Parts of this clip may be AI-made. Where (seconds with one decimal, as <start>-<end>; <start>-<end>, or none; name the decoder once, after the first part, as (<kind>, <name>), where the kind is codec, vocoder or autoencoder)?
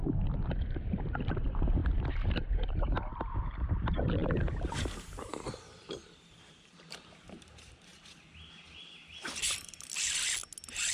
0.0-7.9 (vocoder, BigVGAN v2)